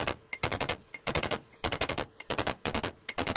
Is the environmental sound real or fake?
fake